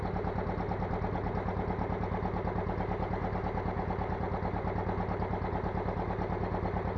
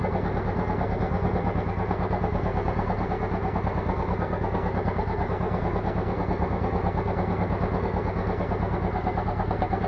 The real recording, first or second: first